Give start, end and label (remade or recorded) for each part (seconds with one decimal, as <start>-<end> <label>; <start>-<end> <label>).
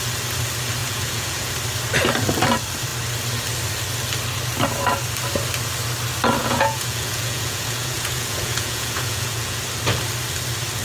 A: 0.0-0.8 recorded; 0.8-1.5 remade; 1.5-6.4 recorded; 6.4-9.6 remade; 9.6-10.8 recorded